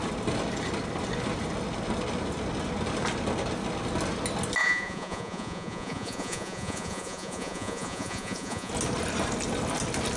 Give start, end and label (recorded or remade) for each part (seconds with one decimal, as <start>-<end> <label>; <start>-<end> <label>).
0.0-4.6 recorded; 4.6-8.7 remade; 8.7-10.2 recorded